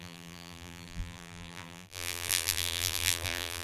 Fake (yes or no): yes